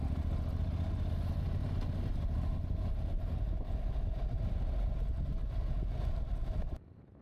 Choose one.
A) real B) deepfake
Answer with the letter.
A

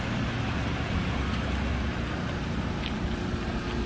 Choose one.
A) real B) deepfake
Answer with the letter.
A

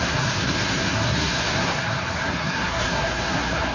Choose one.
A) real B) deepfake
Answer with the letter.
B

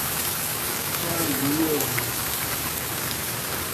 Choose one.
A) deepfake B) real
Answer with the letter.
A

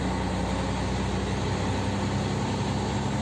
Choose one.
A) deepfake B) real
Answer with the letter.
B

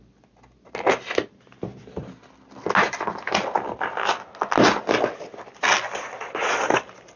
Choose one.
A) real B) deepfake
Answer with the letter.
A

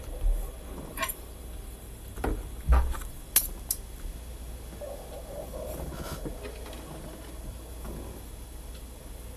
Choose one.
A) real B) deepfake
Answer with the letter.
A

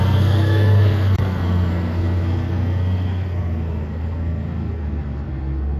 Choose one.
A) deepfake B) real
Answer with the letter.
A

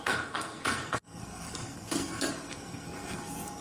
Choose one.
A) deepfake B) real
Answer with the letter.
A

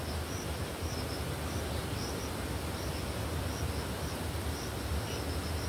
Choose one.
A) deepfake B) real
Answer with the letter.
B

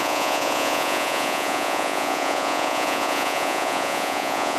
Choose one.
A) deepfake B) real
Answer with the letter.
A